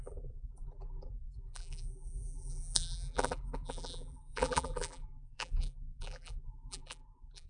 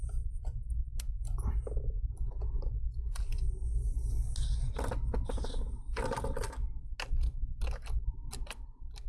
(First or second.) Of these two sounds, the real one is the second